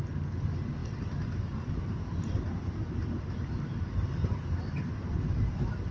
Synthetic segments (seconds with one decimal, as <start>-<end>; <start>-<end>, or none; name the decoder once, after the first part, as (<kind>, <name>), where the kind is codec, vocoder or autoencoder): none